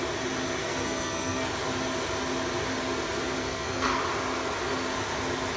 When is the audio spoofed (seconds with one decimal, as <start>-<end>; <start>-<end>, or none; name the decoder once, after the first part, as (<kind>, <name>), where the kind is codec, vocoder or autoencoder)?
0.6-1.5 (codec, SNAC); 3.4-4.0